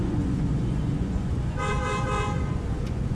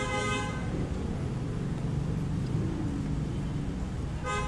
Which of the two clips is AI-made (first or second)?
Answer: first